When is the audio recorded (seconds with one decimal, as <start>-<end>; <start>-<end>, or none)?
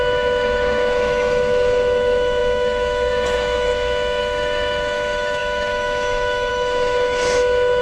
3.7-4.2